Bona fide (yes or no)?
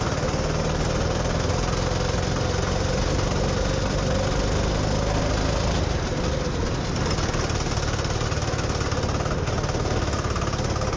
yes